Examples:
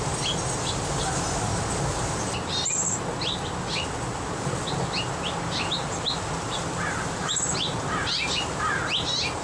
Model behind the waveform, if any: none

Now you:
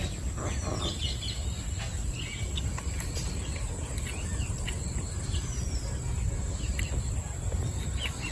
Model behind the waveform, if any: none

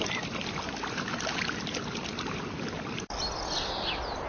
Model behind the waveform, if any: vocoder, BigVGAN v2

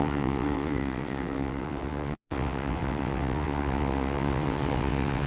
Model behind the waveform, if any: vocoder, WaveNeXt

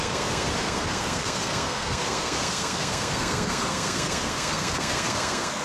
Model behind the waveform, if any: codec, SNAC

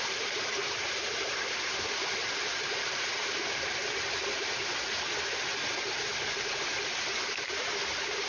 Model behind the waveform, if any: none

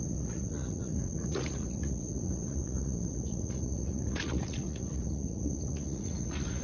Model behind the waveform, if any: vocoder, Vocos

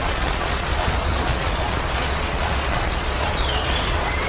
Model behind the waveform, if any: vocoder, Vocos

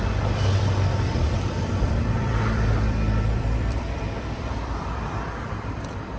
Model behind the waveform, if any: vocoder, BigVGAN v2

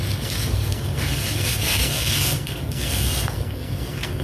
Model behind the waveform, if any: codec, SNAC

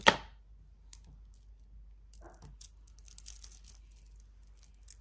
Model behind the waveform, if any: none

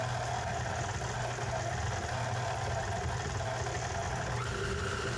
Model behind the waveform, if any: none